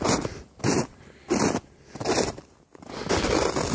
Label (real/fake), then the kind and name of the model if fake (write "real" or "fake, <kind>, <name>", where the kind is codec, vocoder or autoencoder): real